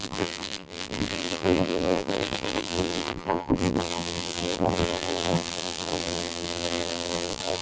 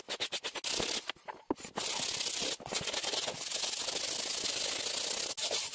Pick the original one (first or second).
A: second